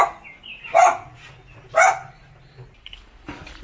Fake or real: real